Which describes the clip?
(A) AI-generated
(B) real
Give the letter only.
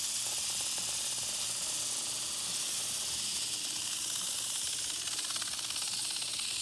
B